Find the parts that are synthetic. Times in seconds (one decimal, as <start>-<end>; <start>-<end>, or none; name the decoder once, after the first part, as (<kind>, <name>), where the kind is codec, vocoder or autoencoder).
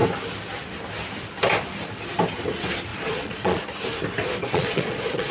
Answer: 2.9-3.6 (vocoder, Vocos); 4.4-5.3